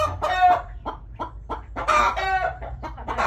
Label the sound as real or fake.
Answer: fake